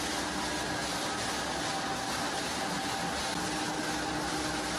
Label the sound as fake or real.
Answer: real